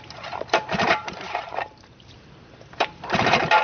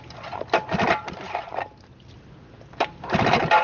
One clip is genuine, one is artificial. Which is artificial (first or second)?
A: first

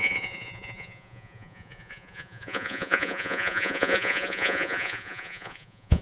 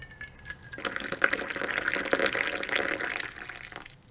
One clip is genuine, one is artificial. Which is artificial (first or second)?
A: first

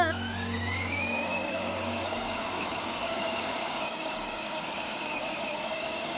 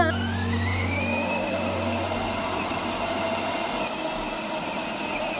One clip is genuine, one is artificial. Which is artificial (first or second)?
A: first